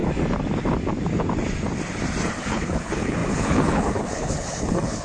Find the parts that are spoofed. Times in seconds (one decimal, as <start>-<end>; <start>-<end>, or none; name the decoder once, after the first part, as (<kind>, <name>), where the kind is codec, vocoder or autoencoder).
2.4-5.0 (codec, HILCodec)